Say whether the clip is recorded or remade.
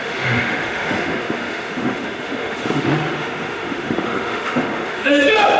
remade